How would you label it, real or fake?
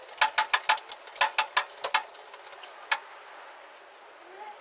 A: real